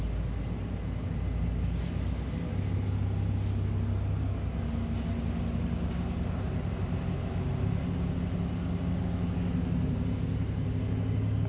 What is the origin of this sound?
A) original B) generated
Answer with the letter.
A